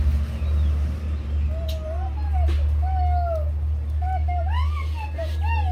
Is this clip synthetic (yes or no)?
no